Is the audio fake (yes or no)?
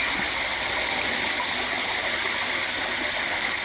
no